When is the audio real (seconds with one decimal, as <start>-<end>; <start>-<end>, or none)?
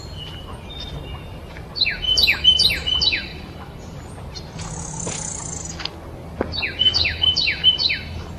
0.0-3.3; 5.4-8.4